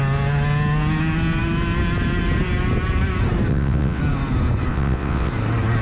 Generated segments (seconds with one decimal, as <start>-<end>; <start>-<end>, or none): 3.5-4.0; 4.7-5.3